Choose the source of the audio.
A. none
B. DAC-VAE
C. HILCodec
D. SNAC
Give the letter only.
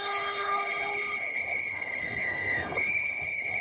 C